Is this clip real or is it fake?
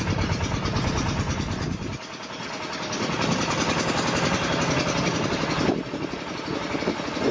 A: real